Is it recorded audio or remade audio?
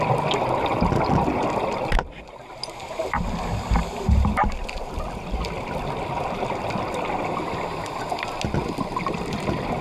recorded